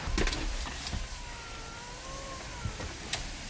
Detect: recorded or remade recorded